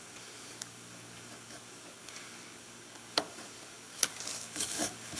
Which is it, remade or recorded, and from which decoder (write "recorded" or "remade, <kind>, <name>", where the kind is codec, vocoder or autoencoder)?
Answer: remade, codec, DAC